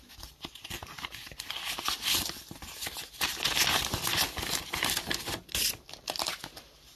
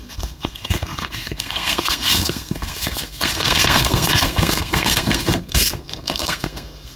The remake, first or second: second